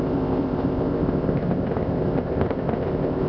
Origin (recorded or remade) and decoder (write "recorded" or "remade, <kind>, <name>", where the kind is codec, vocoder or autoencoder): remade, codec, ZipCodec